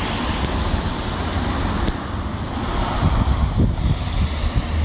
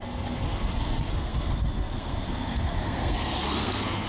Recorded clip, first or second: first